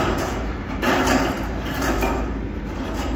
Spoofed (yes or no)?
yes